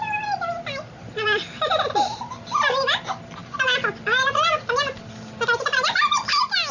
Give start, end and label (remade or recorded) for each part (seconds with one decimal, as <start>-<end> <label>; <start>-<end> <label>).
0.0-6.7 recorded

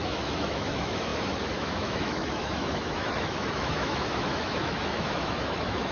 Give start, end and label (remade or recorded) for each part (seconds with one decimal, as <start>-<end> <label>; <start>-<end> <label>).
0.0-5.9 remade